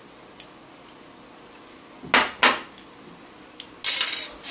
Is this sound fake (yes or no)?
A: no